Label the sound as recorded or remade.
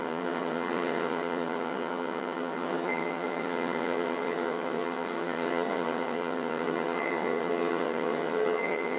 remade